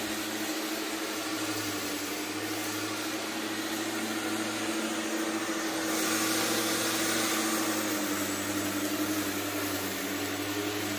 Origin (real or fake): real